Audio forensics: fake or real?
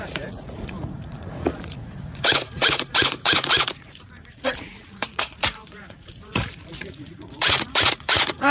fake